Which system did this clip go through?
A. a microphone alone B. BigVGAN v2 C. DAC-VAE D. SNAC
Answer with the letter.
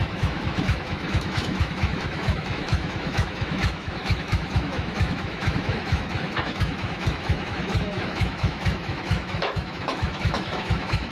C